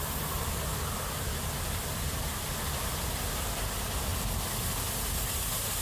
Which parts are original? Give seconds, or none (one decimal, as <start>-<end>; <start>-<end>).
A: 0.0-0.7; 3.0-5.8